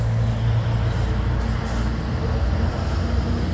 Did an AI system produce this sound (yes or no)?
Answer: no